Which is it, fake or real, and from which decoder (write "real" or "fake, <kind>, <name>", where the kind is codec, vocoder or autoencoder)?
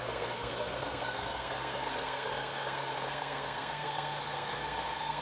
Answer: fake, codec, SNAC